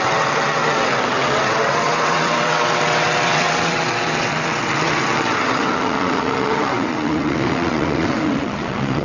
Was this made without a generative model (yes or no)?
no